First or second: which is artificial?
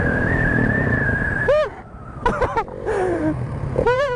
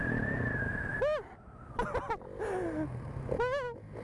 first